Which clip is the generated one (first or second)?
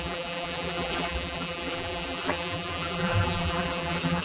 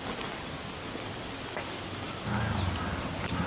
first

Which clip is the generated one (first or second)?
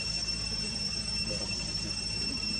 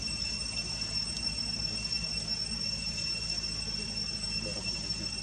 first